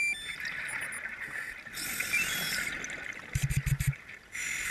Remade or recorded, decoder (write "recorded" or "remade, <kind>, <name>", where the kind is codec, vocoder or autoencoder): recorded